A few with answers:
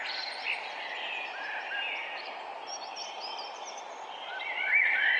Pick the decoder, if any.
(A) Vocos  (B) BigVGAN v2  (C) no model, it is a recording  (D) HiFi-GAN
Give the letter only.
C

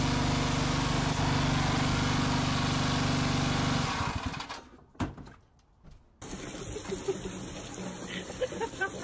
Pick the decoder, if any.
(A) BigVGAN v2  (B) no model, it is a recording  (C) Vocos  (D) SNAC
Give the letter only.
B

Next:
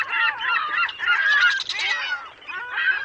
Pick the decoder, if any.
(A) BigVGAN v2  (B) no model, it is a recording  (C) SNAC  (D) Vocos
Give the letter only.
B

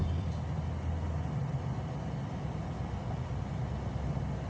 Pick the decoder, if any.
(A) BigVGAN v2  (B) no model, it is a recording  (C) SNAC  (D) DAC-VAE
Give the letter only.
B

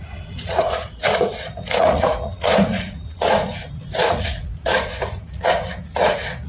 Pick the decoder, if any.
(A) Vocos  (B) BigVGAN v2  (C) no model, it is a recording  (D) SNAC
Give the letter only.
A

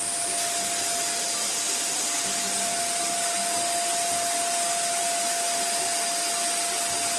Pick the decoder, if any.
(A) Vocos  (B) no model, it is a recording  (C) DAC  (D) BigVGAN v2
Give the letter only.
B